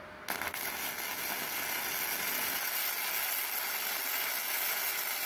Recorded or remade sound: recorded